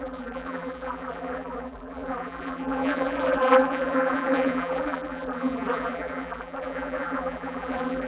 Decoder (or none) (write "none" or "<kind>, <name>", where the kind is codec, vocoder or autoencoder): vocoder, BigVGAN v2